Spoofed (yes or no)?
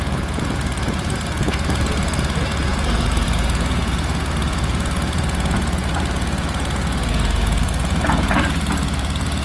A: yes